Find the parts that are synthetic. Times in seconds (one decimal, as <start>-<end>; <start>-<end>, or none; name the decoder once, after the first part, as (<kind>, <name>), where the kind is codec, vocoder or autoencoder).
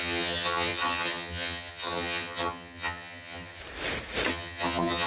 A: 0.0-3.6 (vocoder, HiFi-GAN); 4.3-5.1